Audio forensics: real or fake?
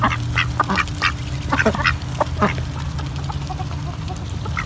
real